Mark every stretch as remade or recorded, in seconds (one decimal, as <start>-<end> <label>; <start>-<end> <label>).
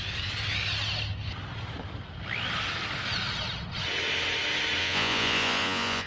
0.0-4.8 recorded; 4.8-6.1 remade